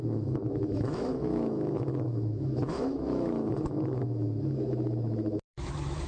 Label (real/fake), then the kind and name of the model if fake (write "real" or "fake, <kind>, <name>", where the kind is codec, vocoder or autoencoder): fake, autoencoder, DAC-VAE